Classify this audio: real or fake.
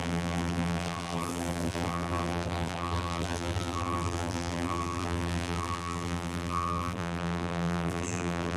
fake